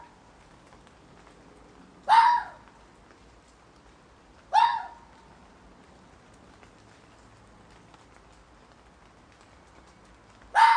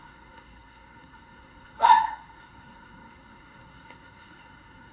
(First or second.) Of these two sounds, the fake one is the second